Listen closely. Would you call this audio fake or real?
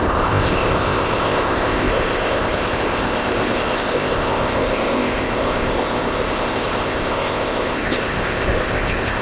fake